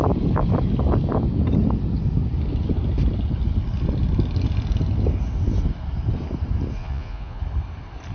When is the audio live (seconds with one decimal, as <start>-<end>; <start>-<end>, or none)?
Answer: 0.0-6.8; 7.4-8.1